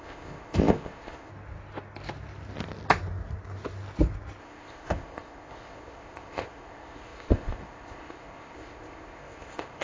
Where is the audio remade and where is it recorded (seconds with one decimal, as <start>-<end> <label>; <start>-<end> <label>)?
0.0-1.3 remade; 1.3-4.4 recorded; 4.4-9.8 remade